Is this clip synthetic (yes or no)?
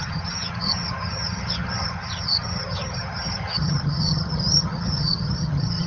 yes